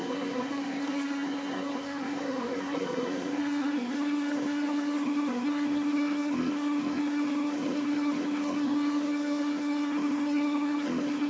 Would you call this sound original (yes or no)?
no